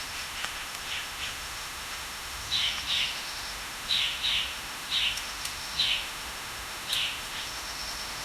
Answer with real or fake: fake